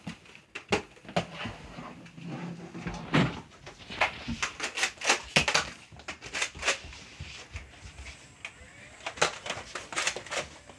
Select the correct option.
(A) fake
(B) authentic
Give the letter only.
B